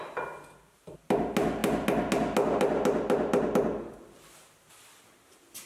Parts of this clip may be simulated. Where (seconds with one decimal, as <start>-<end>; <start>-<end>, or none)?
none